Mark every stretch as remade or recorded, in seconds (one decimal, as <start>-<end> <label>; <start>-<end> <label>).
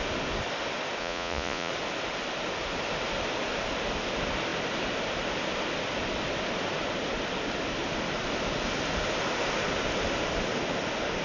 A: 0.0-1.0 recorded; 1.0-1.7 remade; 1.7-11.2 recorded